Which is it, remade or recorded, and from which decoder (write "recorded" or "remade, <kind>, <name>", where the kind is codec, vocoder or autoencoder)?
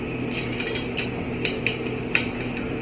recorded